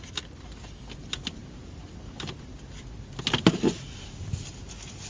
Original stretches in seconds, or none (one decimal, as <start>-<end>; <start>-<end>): 0.0-5.1